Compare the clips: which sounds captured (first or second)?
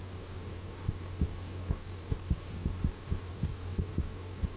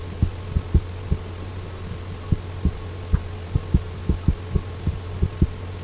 second